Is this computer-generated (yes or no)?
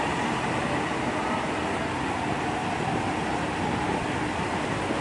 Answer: no